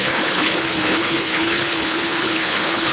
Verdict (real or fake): fake